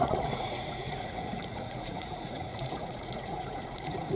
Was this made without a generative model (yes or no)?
no